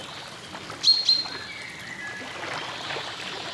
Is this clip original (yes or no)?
yes